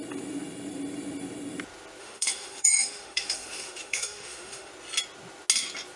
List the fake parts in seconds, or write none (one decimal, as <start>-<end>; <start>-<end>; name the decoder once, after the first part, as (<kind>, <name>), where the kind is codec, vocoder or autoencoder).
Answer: 2.0-4.7 (autoencoder, DAC-VAE)